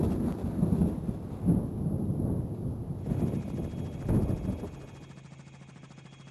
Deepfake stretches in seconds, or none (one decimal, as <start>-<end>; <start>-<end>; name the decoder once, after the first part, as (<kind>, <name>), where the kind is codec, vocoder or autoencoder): none